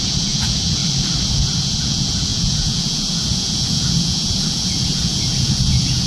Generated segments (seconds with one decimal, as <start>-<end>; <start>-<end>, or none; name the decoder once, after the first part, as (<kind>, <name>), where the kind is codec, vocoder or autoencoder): 0.0-0.8 (vocoder, Vocos); 1.3-6.1